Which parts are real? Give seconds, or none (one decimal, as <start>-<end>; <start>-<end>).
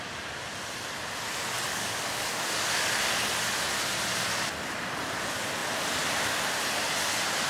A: 0.0-1.7; 2.9-7.5